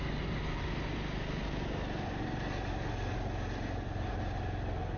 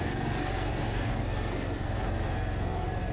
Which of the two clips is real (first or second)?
first